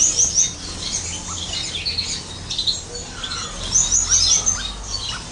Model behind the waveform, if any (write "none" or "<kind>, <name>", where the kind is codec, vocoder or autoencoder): none